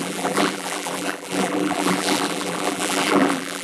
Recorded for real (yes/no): no